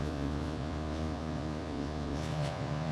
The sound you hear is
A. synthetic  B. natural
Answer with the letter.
A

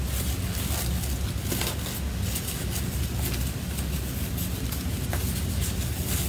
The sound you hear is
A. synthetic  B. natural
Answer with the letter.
B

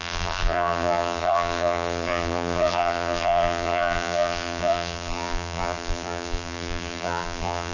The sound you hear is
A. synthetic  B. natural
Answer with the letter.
A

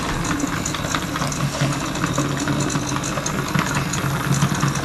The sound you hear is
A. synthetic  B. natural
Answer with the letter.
B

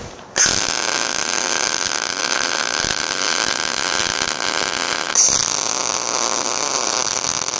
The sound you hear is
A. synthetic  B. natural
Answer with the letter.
B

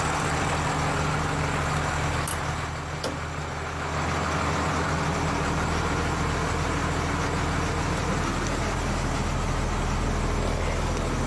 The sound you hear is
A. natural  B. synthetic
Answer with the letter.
A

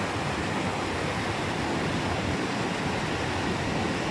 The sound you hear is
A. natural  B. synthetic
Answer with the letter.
A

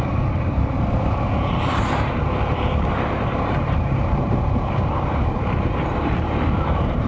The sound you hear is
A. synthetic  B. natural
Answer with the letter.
A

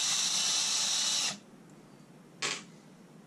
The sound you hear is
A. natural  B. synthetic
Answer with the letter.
A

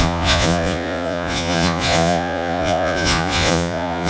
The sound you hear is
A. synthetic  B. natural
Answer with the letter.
A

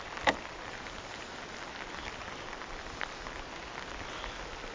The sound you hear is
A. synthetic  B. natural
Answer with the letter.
B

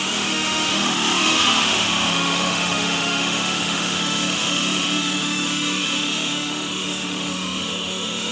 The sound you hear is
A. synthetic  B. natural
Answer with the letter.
A